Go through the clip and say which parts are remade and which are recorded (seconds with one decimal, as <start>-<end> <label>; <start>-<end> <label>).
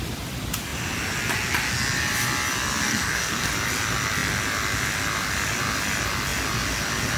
0.0-2.9 recorded; 2.9-3.5 remade; 3.5-7.2 recorded